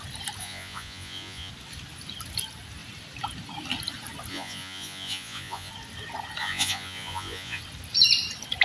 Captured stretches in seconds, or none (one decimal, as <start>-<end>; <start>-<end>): 0.0-0.4; 1.5-4.3; 5.7-6.4; 7.6-8.6